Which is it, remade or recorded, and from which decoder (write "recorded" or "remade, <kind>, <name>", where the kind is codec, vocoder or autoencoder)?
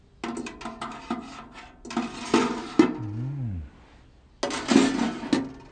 recorded